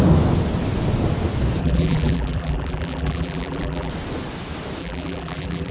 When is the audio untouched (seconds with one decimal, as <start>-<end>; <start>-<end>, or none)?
0.0-1.6; 3.9-4.8